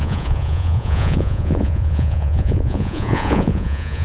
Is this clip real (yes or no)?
no